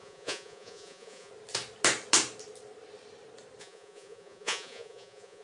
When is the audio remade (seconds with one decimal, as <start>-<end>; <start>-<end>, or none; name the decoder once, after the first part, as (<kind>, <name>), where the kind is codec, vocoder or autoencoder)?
0.0-1.3 (vocoder, Vocos); 3.6-5.4